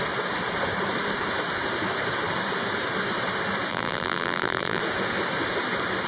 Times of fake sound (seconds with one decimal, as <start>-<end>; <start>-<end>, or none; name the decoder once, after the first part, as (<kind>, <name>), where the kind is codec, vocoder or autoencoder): 3.7-4.8 (vocoder, BigVGAN v2)